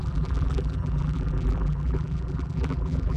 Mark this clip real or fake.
fake